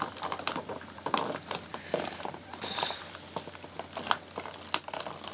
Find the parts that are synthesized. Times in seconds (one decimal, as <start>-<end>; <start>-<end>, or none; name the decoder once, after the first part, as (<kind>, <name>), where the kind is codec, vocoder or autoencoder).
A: 0.7-3.0 (vocoder, BigVGAN v2)